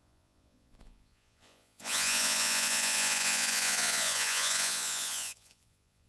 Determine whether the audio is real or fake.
fake